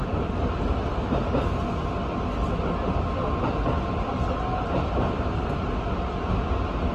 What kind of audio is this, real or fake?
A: real